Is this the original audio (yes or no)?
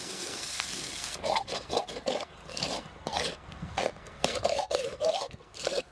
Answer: no